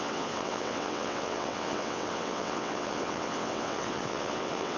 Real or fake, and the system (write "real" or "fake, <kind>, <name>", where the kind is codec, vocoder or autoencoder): fake, vocoder, WaveNeXt